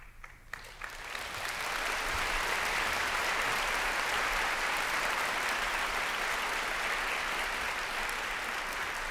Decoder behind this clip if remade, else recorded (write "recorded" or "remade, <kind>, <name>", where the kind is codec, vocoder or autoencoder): recorded